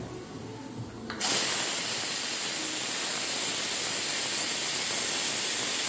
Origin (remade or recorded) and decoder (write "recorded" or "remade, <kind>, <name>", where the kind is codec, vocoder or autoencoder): recorded